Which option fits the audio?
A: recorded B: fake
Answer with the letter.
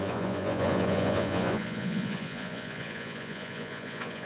B